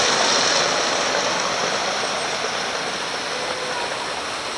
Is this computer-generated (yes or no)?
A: no